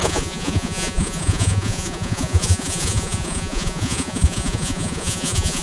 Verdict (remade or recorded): remade